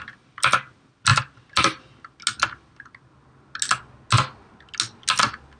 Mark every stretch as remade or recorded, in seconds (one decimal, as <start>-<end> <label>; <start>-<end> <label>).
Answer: 0.0-5.6 recorded